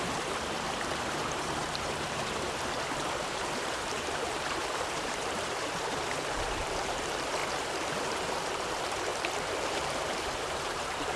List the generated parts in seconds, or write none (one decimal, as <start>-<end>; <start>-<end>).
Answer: 0.0-7.4; 7.9-9.1; 9.7-11.2